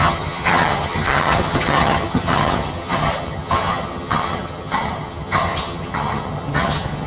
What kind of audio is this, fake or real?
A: fake